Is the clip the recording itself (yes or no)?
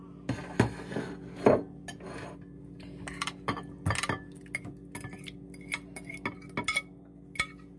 yes